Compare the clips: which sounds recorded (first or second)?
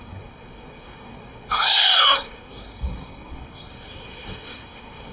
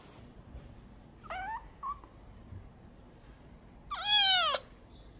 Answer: second